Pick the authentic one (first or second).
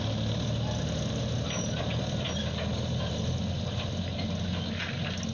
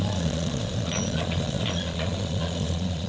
first